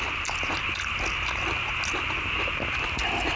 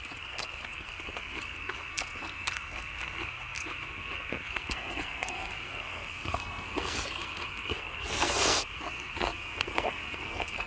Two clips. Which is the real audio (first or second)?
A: first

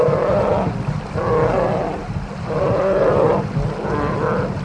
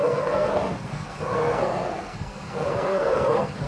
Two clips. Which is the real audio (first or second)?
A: first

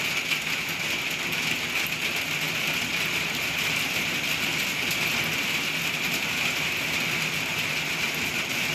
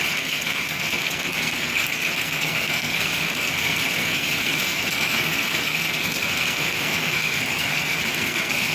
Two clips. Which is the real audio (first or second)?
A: first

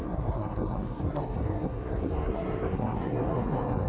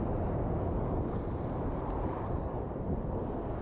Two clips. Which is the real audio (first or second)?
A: second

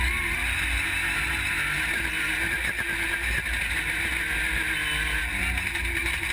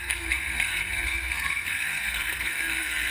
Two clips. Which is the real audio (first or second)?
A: first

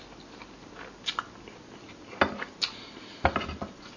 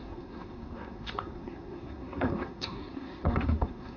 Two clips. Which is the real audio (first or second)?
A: first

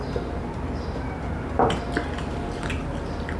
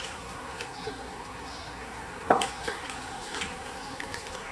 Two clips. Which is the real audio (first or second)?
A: first